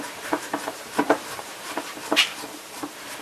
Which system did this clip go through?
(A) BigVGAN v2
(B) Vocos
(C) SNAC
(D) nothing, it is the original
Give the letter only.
A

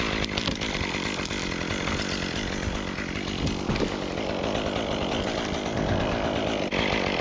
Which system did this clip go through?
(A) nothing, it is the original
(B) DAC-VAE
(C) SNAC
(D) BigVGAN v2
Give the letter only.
A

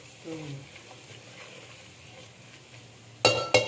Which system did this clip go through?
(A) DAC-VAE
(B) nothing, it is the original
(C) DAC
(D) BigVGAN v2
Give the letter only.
B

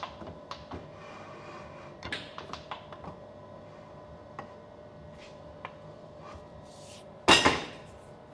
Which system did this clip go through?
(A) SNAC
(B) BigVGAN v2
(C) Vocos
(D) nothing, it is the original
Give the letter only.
D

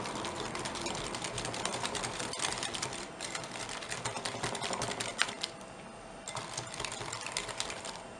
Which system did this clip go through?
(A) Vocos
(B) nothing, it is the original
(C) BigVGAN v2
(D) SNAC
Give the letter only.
C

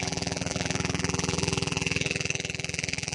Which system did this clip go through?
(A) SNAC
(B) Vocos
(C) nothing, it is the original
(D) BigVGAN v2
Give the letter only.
D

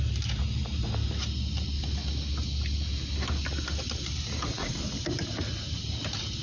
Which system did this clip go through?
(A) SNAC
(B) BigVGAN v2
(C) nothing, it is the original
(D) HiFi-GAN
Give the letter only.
C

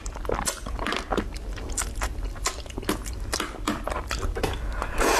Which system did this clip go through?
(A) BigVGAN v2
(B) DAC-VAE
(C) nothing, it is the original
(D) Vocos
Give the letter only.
C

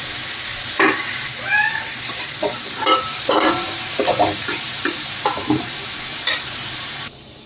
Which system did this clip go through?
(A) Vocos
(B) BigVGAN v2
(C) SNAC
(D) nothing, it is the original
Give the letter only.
B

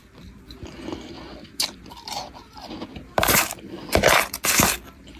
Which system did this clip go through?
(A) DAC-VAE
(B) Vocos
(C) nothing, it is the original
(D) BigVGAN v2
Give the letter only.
D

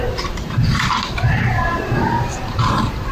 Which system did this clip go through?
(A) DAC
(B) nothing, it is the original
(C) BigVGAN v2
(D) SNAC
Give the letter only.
C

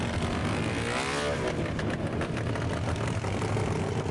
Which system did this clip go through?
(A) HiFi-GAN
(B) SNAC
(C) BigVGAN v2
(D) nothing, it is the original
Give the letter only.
D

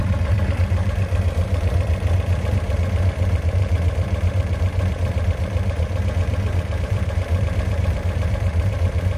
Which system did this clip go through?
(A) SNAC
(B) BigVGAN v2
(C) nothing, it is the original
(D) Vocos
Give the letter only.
B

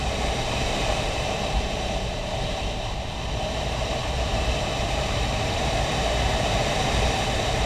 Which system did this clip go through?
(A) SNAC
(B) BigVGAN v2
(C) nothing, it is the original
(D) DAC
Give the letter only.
B